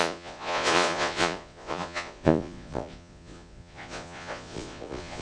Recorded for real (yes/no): no